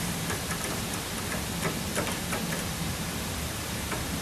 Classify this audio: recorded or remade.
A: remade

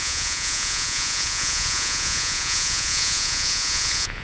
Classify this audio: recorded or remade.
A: remade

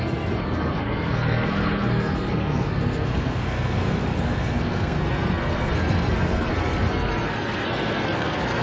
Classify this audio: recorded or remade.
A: remade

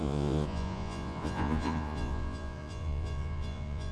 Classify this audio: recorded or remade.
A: remade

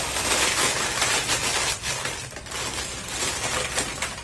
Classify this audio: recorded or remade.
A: recorded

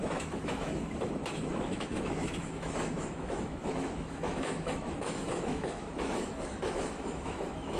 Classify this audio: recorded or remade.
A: remade